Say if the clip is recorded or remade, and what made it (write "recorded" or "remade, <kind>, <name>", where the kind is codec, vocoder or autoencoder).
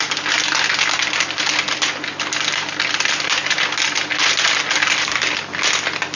recorded